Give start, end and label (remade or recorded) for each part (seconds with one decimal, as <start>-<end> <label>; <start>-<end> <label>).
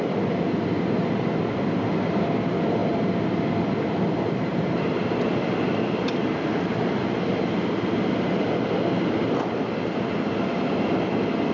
0.0-11.5 recorded